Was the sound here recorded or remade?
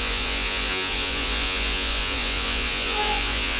remade